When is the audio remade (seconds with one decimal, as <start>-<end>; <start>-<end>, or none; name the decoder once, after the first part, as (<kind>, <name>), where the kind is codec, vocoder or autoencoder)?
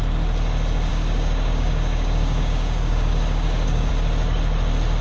0.9-3.9 (codec, DAC)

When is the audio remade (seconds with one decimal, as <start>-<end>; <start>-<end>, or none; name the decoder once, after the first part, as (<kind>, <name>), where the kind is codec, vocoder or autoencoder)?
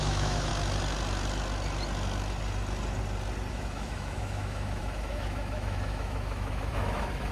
0.0-0.5 (autoencoder, DAC-VAE); 3.5-7.3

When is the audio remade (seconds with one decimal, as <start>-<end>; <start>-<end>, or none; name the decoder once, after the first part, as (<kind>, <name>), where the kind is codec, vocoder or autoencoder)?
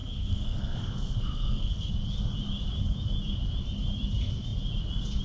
0.0-1.9 (codec, SNAC)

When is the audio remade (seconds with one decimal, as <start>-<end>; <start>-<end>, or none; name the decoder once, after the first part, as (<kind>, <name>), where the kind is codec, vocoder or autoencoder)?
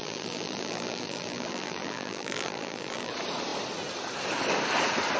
0.0-3.1 (vocoder, BigVGAN v2)